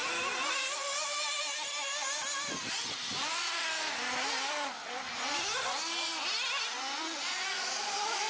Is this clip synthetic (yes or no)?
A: no